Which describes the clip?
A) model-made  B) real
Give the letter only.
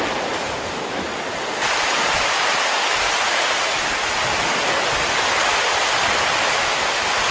B